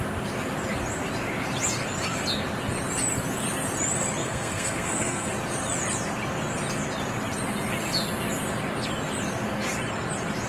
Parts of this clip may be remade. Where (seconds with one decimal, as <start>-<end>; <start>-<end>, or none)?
4.2-5.3